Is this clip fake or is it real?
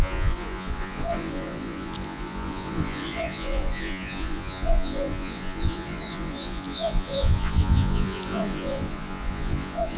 fake